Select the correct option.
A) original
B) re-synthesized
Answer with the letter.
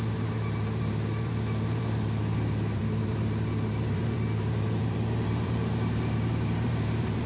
B